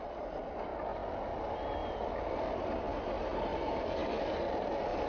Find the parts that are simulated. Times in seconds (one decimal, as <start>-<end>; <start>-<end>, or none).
0.0-0.7; 1.4-5.1